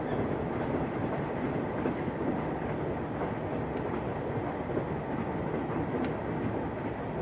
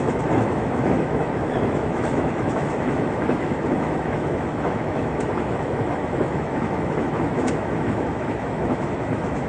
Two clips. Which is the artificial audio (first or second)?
second